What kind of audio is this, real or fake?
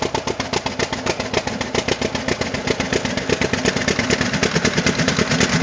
real